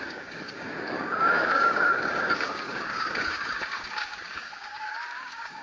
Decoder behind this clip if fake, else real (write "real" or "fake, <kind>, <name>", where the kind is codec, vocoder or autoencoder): fake, codec, DAC